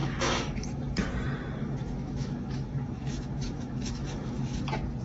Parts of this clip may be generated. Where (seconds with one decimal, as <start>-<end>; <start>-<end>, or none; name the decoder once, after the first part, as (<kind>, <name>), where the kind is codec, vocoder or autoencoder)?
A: 0.0-1.1 (autoencoder, DAC-VAE); 1.6-4.6